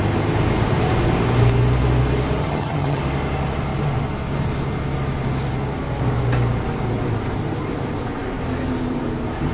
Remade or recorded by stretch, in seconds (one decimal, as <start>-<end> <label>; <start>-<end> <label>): 0.0-2.4 recorded; 2.4-3.0 remade; 3.0-9.5 recorded